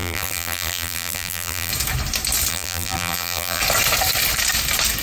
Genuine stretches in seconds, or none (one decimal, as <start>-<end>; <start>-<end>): 1.7-2.5; 3.6-5.0